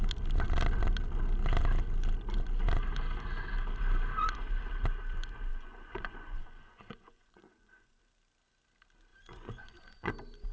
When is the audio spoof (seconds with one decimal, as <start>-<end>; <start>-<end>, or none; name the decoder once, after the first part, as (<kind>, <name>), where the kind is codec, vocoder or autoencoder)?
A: 5.5-8.0 (vocoder, Vocos); 9.1-10.1